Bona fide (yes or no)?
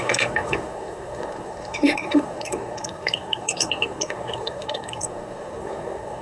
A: no